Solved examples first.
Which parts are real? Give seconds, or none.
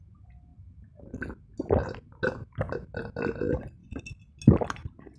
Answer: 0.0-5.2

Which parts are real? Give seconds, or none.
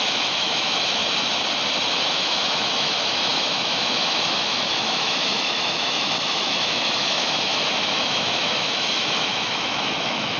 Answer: 1.0-2.1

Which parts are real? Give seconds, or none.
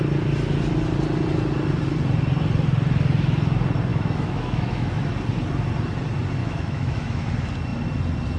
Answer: 0.0-3.9; 5.1-6.4; 7.3-8.4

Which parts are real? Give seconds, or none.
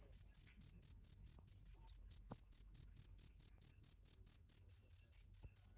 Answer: 0.0-0.4; 1.5-2.0; 4.7-5.8